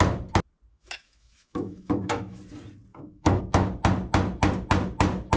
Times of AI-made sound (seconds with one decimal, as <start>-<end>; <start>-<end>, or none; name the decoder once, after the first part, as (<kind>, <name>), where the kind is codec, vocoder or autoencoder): 0.7-2.4 (autoencoder, DAC-VAE); 2.9-3.4